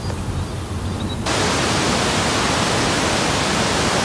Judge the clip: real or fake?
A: real